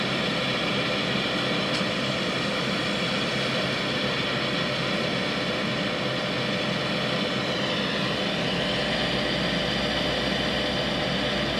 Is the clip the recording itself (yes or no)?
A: yes